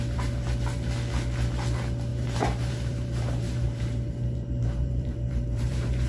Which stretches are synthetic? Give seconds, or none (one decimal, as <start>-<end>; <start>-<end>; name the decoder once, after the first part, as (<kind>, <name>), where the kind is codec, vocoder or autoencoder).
2.1-6.1 (vocoder, BigVGAN v2)